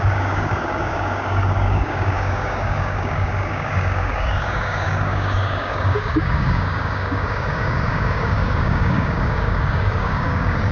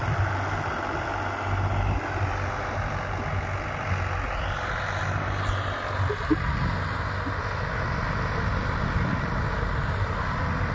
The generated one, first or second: first